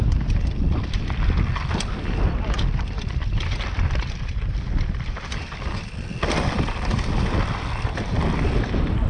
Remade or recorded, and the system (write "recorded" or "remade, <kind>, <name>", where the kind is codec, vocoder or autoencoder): remade, vocoder, BigVGAN v2